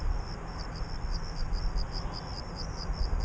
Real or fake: real